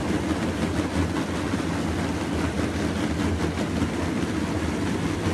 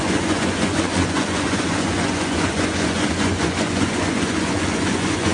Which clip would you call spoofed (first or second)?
second